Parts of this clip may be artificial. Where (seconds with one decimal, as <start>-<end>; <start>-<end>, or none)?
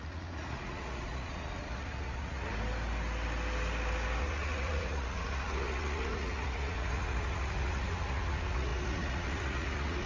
0.0-2.5; 4.2-10.1